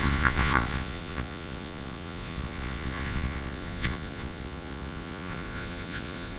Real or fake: fake